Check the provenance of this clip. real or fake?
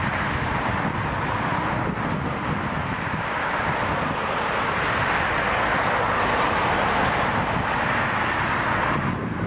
real